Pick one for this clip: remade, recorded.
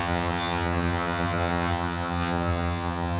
remade